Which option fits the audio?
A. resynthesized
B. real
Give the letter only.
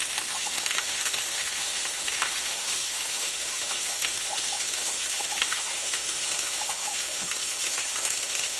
A